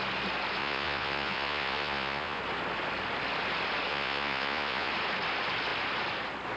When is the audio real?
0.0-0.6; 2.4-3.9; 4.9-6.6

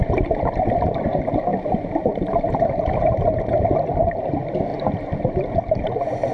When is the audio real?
0.0-0.8; 4.7-5.5

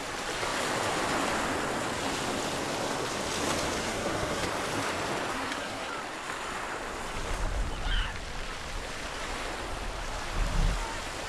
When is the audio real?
0.0-3.8; 4.5-5.3; 5.9-11.3